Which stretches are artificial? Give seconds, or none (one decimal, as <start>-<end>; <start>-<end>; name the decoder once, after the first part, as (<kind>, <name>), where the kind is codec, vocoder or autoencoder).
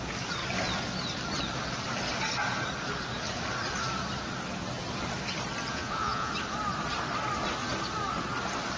5.7-6.3 (vocoder, Vocos)